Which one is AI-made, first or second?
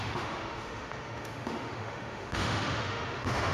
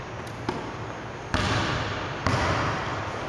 first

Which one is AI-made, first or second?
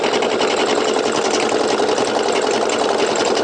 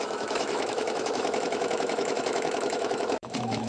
second